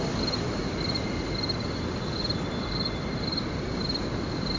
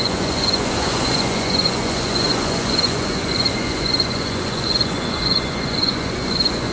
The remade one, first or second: second